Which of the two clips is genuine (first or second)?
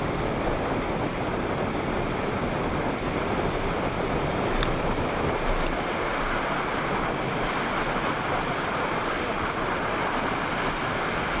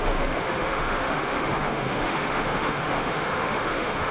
first